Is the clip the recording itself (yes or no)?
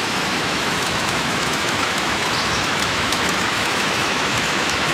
no